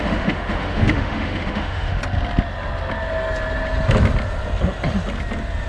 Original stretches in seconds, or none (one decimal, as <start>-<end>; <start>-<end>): 2.0-5.7